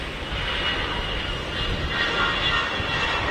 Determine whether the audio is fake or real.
real